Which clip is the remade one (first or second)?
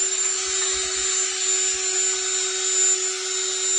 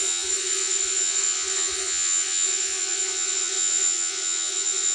second